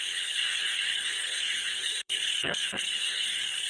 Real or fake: fake